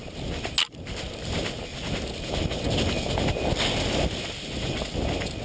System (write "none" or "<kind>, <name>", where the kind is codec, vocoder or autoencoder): none